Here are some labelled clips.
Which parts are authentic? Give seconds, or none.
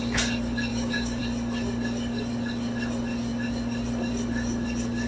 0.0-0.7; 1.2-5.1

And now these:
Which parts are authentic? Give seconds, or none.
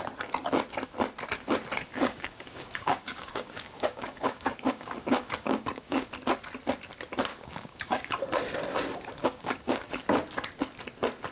0.0-1.9; 6.1-7.3; 8.1-9.2; 10.0-11.3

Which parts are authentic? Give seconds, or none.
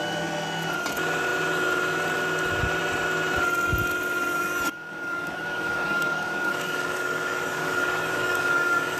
0.0-4.3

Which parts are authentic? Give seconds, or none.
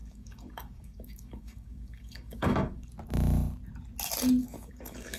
2.9-4.4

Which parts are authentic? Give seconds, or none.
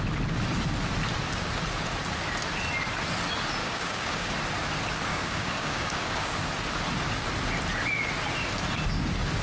0.0-3.6; 4.3-5.1; 6.5-9.4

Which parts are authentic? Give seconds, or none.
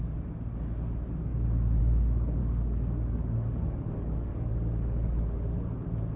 0.0-2.4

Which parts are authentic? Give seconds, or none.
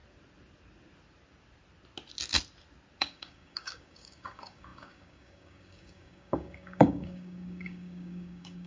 0.0-3.0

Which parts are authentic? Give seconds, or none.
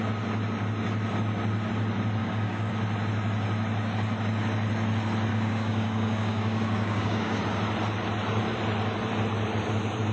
0.0-2.2; 2.7-5.3; 7.4-10.1